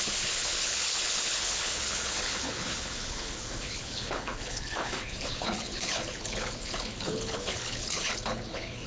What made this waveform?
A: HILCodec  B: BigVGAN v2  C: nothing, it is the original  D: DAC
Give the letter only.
A